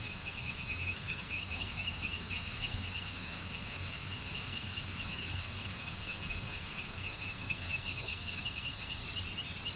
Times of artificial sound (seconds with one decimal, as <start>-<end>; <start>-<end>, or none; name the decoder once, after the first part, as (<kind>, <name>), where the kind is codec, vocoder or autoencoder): 0.0-9.0 (codec, SNAC)